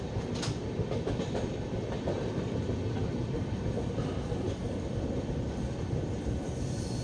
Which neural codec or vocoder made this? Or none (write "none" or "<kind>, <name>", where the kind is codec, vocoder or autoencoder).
none